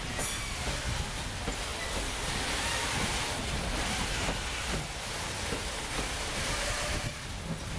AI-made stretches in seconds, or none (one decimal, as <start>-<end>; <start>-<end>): none